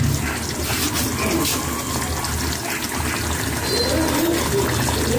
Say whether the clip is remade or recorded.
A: recorded